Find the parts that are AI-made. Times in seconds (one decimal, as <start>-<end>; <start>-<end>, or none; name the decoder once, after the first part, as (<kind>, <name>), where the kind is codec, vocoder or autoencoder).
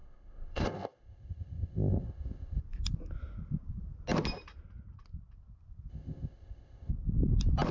0.0-2.6 (codec, ZipCodec); 5.9-6.9